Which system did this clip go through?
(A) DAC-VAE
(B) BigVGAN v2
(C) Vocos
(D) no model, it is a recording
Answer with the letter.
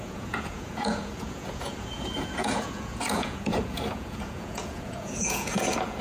C